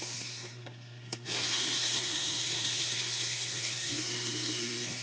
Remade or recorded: remade